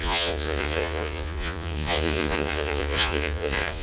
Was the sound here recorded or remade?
remade